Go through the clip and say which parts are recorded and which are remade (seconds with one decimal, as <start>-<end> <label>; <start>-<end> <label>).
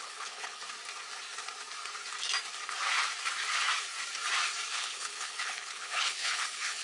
0.0-0.6 remade; 0.6-4.7 recorded; 4.7-6.8 remade